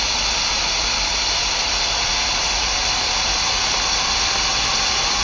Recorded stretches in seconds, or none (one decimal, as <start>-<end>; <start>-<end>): 0.0-5.2